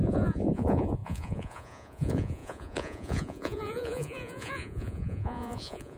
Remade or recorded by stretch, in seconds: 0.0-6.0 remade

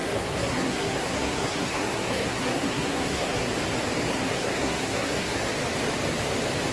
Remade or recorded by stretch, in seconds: 0.0-3.5 remade; 3.5-4.1 recorded; 4.1-5.5 remade; 5.5-6.7 recorded

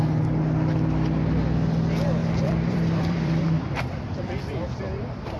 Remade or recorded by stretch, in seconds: 0.0-2.2 recorded; 2.2-4.8 remade; 4.8-5.4 recorded